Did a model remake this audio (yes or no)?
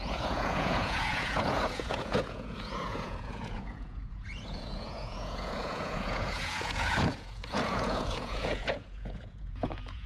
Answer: yes